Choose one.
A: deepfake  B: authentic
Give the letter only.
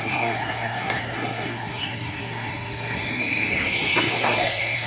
A